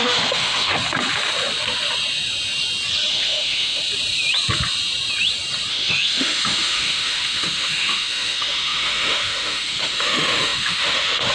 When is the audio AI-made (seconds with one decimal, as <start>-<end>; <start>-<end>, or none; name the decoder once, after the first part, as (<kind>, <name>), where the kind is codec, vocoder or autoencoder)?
0.0-0.7 (autoencoder, DAC-VAE); 3.1-3.8; 5.7-11.3